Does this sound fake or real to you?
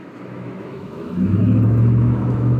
fake